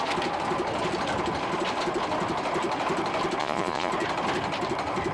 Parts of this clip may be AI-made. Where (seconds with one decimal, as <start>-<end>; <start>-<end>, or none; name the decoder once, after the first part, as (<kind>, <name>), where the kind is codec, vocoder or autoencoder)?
3.4-3.9 (vocoder, Vocos)